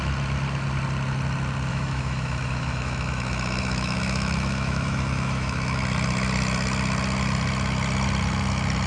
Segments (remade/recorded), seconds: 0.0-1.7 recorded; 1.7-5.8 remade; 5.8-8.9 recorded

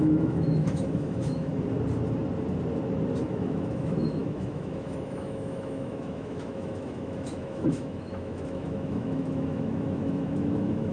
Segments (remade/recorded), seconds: 0.0-1.5 remade; 1.5-3.2 recorded; 3.2-10.9 remade

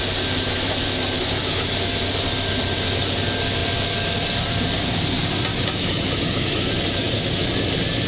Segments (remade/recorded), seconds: 0.0-1.4 recorded; 1.4-2.0 remade; 2.0-5.5 recorded; 5.5-6.6 remade; 6.6-8.1 recorded

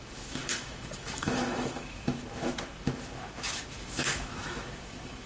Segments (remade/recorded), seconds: 0.0-5.3 remade

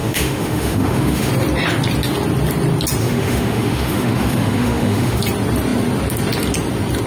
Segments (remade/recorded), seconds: 0.0-1.3 remade; 1.3-3.0 recorded; 3.0-5.2 remade; 5.2-7.1 recorded

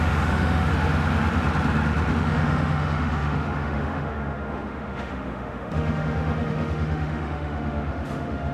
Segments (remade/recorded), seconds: 0.0-0.7 remade; 0.7-2.1 recorded; 2.1-8.5 remade

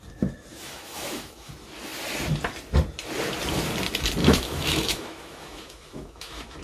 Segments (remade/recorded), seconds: 0.0-0.5 recorded; 0.5-1.5 remade; 1.5-4.2 recorded; 4.2-6.6 remade

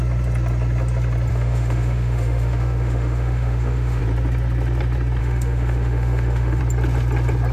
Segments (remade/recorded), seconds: 0.0-1.3 recorded; 1.3-4.0 remade; 4.0-5.2 recorded; 5.2-6.6 remade; 6.6-7.5 recorded